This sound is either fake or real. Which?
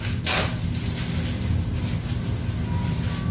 real